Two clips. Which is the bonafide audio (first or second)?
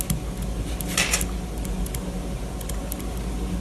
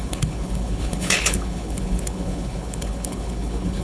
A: first